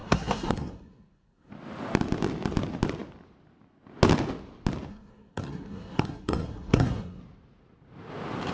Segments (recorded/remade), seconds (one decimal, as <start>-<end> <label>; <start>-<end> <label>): 0.0-1.5 remade; 1.5-4.9 recorded; 4.9-7.2 remade; 7.2-8.5 recorded